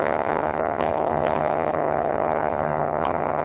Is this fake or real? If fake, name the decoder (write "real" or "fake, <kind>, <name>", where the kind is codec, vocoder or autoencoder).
fake, vocoder, HiFi-GAN